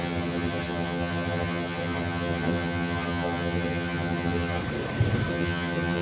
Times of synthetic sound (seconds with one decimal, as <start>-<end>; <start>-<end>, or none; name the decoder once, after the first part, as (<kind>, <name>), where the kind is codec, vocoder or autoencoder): 0.0-4.6 (vocoder, HiFi-GAN); 5.3-6.0